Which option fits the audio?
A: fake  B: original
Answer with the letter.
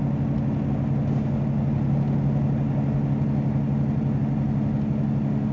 B